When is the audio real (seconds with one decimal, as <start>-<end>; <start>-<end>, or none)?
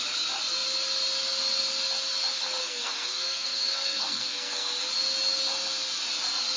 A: 0.0-2.6; 4.7-6.6